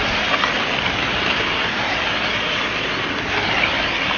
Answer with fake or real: real